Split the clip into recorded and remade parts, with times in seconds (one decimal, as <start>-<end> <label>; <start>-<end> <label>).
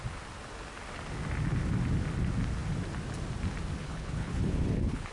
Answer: 0.0-3.8 recorded; 3.8-5.1 remade